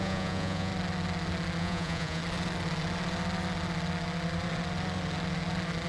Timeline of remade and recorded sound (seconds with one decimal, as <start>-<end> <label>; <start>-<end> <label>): 0.0-0.7 remade; 0.7-1.6 recorded; 1.6-2.2 remade; 2.2-5.9 recorded

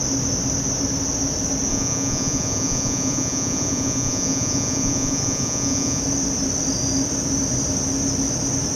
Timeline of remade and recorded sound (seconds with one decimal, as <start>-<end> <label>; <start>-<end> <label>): 0.0-1.7 recorded; 1.7-6.0 remade; 6.0-8.8 recorded

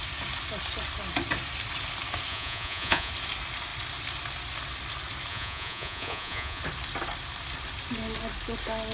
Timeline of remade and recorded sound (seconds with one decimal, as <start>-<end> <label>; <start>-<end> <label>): 0.0-2.3 recorded; 2.3-3.1 remade; 3.1-5.3 recorded; 5.3-6.6 remade; 6.6-8.9 recorded

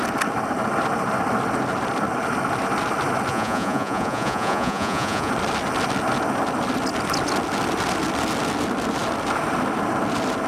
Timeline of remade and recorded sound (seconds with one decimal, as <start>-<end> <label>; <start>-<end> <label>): 0.0-3.3 recorded; 3.3-5.3 remade; 5.3-10.5 recorded